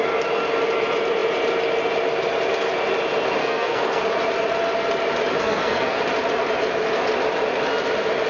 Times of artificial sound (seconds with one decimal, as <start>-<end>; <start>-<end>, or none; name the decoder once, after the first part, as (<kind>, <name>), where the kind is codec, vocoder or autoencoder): 3.4-4.0 (codec, SNAC); 5.4-6.0